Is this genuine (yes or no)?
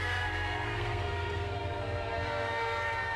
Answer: no